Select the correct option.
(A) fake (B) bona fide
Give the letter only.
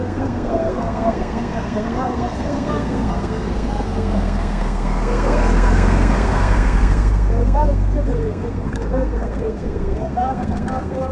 A